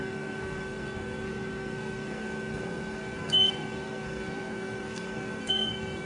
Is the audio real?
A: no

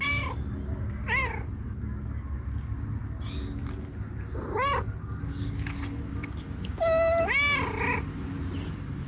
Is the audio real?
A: yes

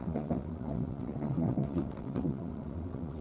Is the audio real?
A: no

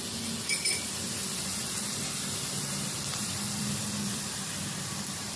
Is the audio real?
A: no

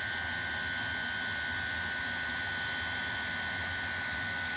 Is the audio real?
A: yes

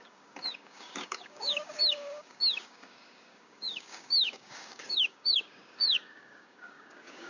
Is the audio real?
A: no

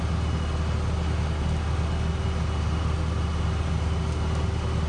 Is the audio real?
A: yes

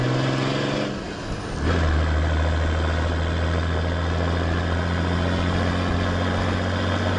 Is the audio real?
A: yes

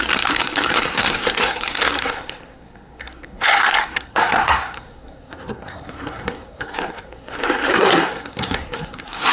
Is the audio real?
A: no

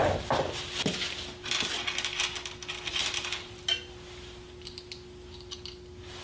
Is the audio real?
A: yes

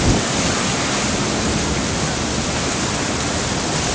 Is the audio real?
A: yes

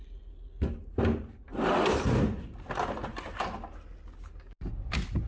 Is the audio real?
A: yes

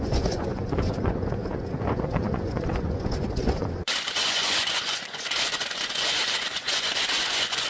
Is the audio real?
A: no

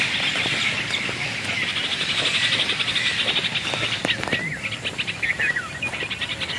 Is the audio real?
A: yes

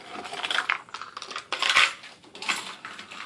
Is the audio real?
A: yes